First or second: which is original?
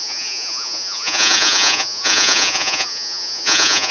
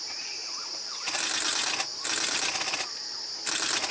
second